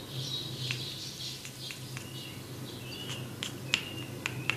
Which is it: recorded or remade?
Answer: recorded